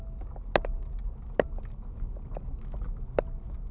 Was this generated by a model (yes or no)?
no